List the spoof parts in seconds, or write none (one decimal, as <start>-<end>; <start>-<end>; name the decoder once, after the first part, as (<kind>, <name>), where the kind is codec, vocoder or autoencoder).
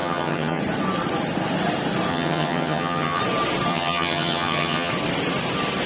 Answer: 0.0-0.6 (vocoder, HiFi-GAN); 2.1-3.2; 3.7-4.9